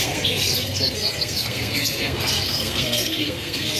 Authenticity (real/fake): fake